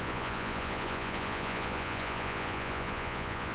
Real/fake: fake